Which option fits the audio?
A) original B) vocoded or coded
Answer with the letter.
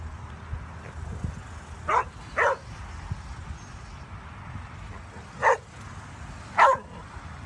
A